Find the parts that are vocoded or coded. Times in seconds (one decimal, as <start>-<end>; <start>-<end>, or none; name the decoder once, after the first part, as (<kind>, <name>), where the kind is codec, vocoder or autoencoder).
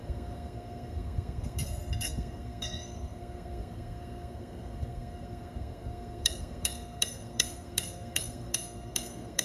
0.0-9.4 (codec, SNAC)